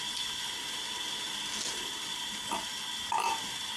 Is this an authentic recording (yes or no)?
yes